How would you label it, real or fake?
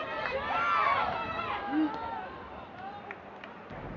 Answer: real